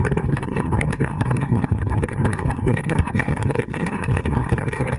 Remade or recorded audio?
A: remade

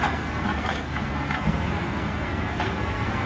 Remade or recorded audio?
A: remade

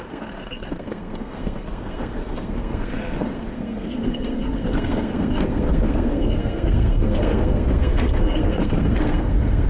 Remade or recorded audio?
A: remade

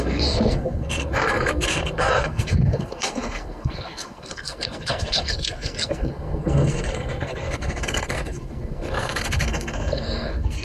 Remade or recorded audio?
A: remade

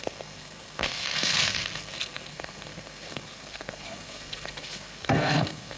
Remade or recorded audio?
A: remade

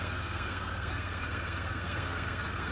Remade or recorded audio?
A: remade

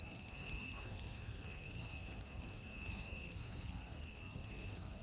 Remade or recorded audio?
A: remade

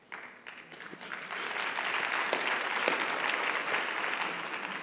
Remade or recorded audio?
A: recorded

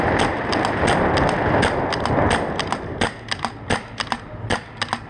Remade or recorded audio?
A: recorded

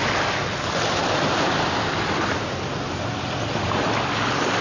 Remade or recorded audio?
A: recorded